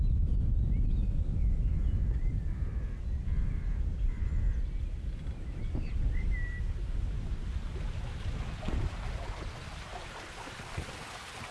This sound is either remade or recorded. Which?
recorded